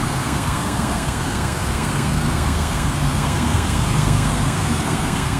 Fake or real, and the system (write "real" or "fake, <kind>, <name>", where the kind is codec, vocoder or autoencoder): fake, codec, SNAC